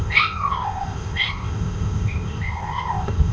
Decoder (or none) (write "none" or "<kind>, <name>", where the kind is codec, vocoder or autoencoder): codec, ZipCodec